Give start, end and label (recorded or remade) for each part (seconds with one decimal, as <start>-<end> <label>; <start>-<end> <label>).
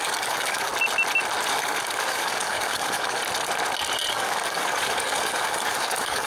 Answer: 0.0-0.7 remade; 0.7-1.5 recorded; 1.5-3.2 remade; 3.2-4.1 recorded; 4.1-6.3 remade